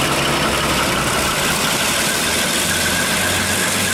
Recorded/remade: recorded